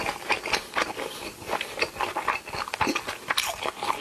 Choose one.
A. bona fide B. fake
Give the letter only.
A